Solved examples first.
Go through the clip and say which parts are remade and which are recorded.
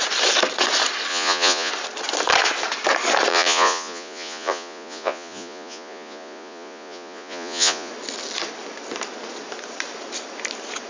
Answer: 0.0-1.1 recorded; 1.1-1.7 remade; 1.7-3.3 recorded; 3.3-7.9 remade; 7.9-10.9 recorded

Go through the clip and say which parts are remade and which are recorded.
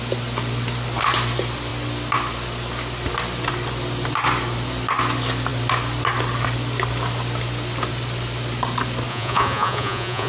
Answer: 0.0-9.1 recorded; 9.1-10.3 remade